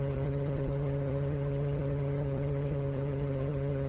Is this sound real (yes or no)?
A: no